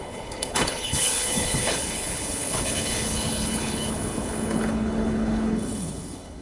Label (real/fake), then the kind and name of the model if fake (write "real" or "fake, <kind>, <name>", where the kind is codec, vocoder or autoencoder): fake, codec, HILCodec